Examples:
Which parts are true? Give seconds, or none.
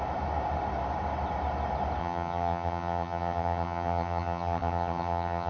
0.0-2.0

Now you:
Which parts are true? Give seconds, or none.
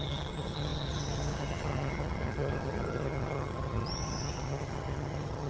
none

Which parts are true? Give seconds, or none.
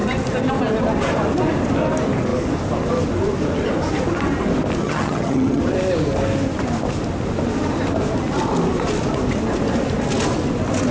0.0-4.8; 5.6-10.9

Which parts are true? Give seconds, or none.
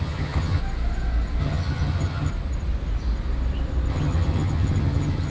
0.6-1.4; 2.3-3.9